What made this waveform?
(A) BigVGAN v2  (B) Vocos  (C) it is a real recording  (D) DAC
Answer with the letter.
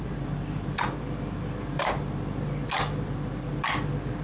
C